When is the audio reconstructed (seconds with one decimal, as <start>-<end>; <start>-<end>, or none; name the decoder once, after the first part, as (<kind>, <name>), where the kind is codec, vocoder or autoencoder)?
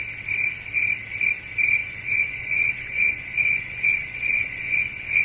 1.8-5.2 (vocoder, Vocos)